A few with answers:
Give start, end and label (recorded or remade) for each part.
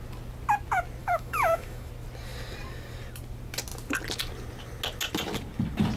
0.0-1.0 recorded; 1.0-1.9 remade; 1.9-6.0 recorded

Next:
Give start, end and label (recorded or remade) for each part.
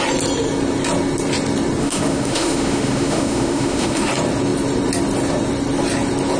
0.0-1.8 recorded; 1.8-4.1 remade; 4.1-6.4 recorded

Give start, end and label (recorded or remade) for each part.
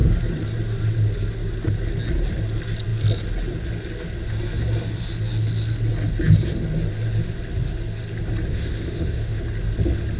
0.0-8.5 recorded; 8.5-9.4 remade; 9.4-10.2 recorded